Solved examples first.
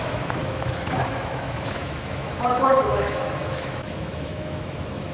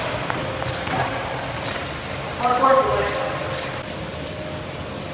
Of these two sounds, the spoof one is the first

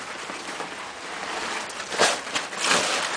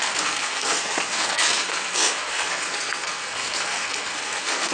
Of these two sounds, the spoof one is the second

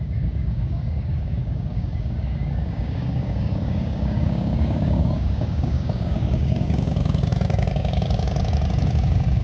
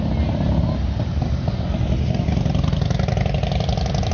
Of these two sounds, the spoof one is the first